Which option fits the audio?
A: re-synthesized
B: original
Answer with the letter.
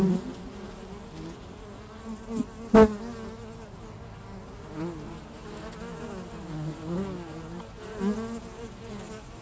B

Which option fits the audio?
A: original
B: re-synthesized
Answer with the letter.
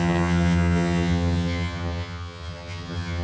B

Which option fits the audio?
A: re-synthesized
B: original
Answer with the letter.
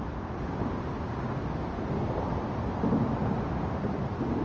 B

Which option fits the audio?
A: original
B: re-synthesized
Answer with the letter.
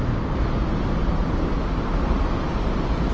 A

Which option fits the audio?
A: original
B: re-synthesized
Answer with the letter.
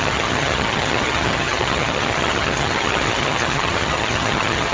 B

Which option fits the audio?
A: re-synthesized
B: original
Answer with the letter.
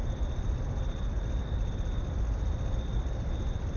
B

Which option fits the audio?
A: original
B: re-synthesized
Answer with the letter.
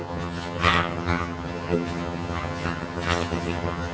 B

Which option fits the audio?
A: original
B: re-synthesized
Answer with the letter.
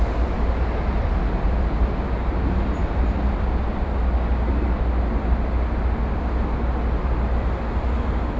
A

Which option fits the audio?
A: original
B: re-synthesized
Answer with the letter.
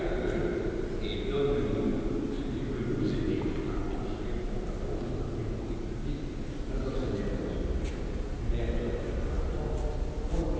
A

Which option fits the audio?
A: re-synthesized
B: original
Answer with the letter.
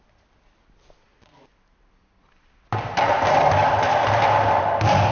B